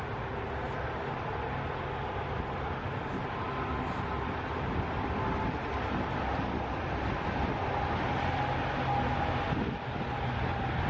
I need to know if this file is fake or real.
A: real